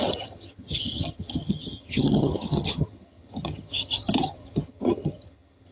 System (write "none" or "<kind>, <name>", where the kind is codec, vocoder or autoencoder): vocoder, HiFi-GAN